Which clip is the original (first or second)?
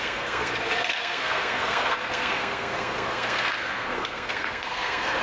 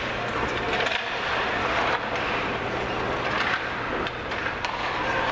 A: second